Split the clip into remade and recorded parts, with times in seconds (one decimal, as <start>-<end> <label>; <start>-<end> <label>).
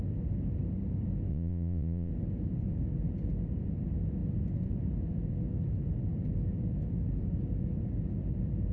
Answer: 0.0-1.3 recorded; 1.3-2.1 remade; 2.1-8.7 recorded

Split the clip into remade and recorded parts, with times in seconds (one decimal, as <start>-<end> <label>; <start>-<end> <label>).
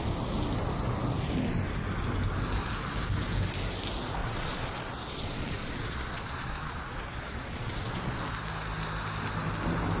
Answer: 0.0-4.2 recorded; 4.2-8.2 remade; 8.2-10.0 recorded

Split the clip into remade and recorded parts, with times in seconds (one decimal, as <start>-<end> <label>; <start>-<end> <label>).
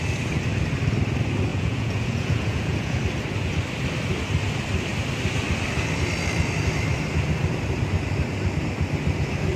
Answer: 0.0-1.5 recorded; 1.5-3.0 remade; 3.0-9.6 recorded